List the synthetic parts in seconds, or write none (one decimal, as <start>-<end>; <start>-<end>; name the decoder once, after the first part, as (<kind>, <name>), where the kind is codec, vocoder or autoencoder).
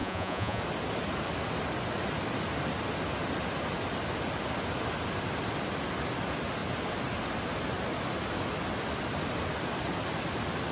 0.0-0.6 (vocoder, Vocos)